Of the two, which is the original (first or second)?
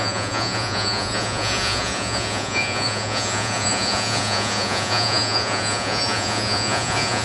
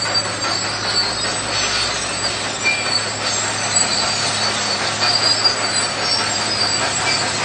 second